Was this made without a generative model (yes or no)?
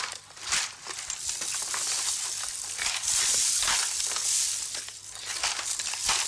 yes